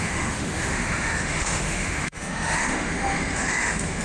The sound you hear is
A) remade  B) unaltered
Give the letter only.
A